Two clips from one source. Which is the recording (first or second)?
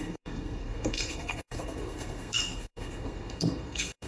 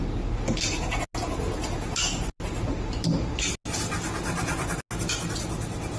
second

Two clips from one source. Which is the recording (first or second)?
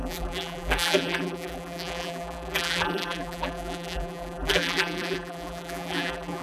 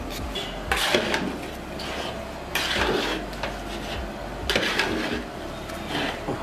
second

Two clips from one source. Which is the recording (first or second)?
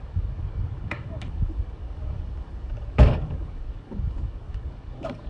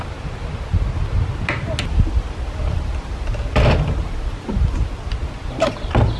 second